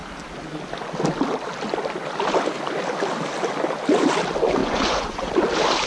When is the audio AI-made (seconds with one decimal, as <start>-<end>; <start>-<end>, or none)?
4.6-5.3